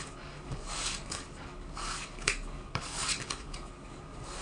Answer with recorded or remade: remade